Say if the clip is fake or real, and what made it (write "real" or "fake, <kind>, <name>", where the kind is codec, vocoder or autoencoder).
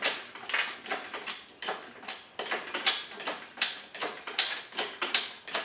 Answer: real